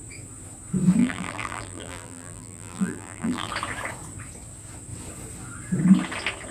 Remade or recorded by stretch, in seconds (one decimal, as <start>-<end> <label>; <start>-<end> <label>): 0.0-1.0 recorded; 1.0-3.5 remade; 3.5-6.5 recorded